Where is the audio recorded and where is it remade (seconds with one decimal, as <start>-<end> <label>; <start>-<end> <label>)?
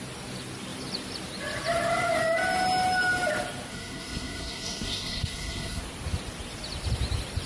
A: 0.0-3.7 recorded; 3.7-5.8 remade; 5.8-7.5 recorded